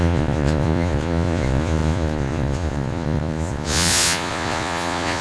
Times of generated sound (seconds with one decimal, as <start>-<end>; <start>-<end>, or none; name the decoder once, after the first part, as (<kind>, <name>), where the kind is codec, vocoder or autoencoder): 0.0-5.2 (vocoder, Vocos)